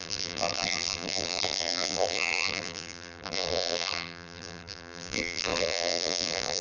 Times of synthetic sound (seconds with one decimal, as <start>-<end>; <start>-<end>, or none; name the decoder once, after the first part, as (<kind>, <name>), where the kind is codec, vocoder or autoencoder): 0.0-6.6 (vocoder, BigVGAN v2)